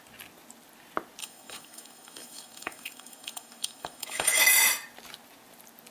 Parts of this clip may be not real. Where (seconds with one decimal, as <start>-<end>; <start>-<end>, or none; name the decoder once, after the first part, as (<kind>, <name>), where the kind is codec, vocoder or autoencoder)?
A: 1.2-4.4 (autoencoder, DAC-VAE)

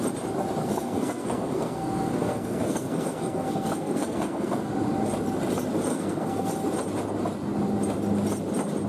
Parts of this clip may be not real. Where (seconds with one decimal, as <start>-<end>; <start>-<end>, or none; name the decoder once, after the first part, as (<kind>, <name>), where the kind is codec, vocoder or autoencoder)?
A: 0.6-4.7 (codec, SNAC); 5.9-6.5